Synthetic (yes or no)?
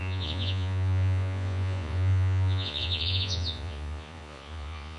yes